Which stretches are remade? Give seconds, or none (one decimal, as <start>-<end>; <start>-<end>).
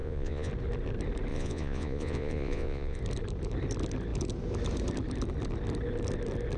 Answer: 0.0-0.5; 1.3-3.0